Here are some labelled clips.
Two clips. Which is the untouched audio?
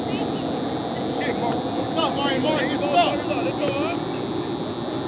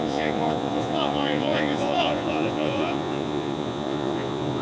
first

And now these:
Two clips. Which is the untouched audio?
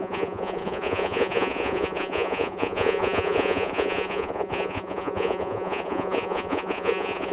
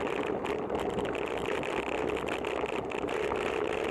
second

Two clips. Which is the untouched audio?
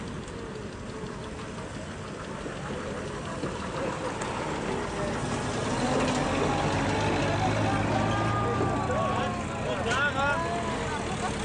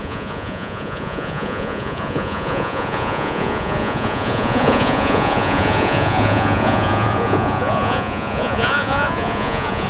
first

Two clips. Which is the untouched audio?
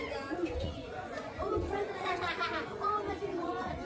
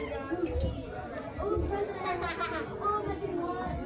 second